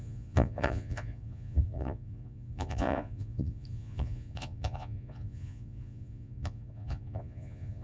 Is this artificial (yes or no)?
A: yes